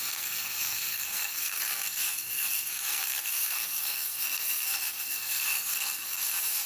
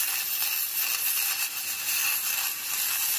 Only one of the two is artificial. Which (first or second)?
first